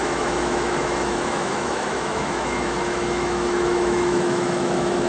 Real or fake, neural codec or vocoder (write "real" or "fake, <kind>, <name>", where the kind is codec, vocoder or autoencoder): fake, autoencoder, DAC-VAE